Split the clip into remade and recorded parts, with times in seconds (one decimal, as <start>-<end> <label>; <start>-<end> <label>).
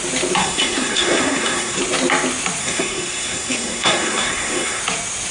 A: 0.0-0.4 recorded; 0.4-1.8 remade; 1.8-2.6 recorded; 2.6-4.8 remade; 4.8-5.3 recorded